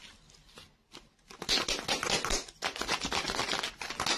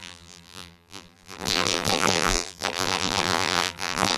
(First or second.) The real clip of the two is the first